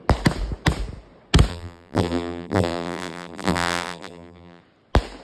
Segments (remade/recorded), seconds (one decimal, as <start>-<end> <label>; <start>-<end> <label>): 0.0-1.5 recorded; 1.5-4.6 remade; 4.6-5.2 recorded